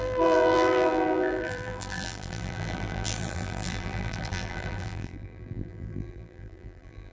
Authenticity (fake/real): fake